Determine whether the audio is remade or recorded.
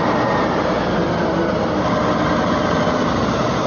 recorded